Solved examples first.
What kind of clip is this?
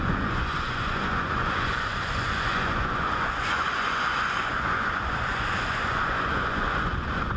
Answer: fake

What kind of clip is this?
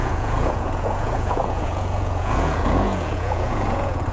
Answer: fake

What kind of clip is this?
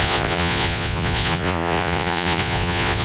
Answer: fake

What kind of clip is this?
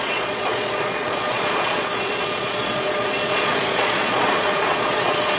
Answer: fake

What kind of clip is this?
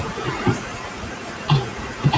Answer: fake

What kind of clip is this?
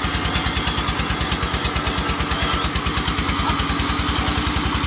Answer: real